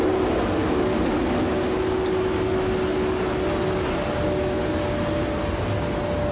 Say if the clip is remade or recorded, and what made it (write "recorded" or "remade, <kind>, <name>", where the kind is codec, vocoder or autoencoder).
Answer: recorded